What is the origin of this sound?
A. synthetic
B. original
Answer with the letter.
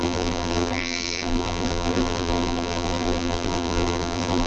A